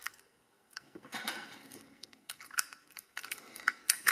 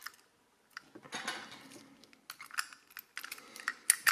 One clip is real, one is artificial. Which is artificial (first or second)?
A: first